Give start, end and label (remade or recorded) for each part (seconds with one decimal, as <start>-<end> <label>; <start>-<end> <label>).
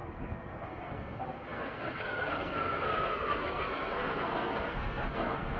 0.0-5.6 remade